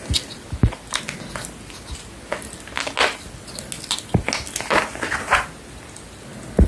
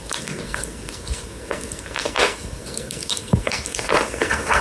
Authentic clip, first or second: first